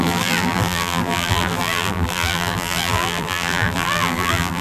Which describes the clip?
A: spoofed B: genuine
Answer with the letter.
A